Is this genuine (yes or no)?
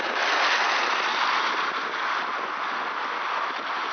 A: yes